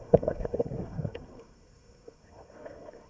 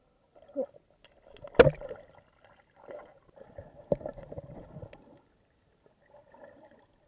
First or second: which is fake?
first